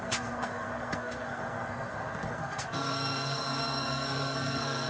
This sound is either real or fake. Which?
fake